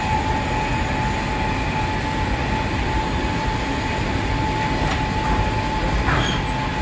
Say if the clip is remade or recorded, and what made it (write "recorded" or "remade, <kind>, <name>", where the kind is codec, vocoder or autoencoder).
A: recorded